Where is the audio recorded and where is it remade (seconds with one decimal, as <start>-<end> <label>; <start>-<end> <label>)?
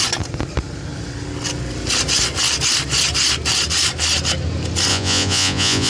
0.0-4.9 recorded; 4.9-5.9 remade